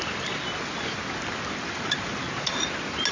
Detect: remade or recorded recorded